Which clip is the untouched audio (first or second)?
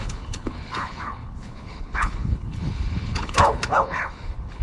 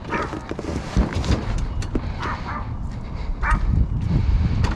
second